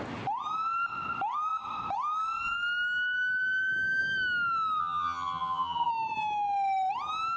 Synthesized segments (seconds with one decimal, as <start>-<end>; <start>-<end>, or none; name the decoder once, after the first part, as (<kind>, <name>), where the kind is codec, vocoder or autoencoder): 4.8-5.9 (vocoder, HiFi-GAN)